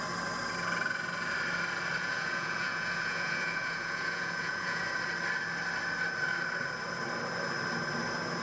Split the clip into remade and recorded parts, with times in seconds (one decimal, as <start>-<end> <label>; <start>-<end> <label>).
0.0-2.0 recorded; 2.0-4.8 remade; 4.8-8.4 recorded